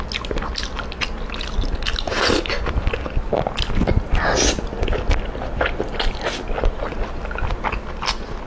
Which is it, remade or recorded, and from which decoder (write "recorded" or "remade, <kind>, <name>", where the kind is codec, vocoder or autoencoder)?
recorded